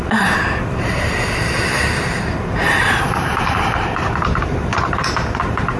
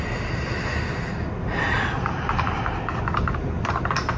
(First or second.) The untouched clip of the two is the second